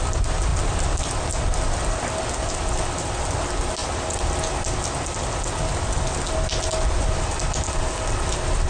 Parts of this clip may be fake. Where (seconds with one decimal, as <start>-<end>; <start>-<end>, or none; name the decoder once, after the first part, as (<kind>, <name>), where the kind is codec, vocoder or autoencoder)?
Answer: none